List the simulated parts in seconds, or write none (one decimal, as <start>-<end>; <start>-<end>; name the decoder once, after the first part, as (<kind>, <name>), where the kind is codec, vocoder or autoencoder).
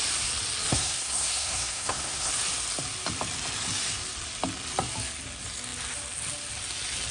0.7-2.3 (codec, SNAC)